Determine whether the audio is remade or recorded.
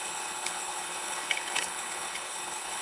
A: remade